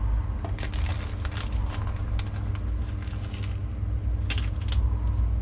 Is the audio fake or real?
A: real